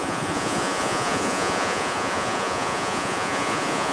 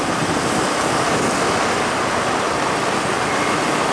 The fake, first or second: first